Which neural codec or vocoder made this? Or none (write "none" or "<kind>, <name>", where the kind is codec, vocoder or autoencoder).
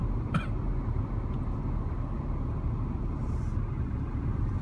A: none